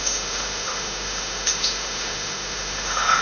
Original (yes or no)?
no